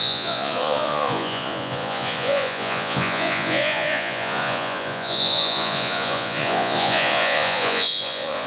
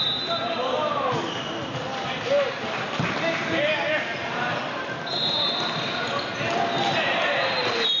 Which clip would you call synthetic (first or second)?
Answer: first